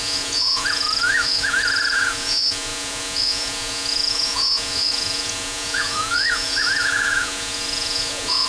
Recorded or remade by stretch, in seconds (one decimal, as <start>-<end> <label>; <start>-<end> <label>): 0.0-8.5 remade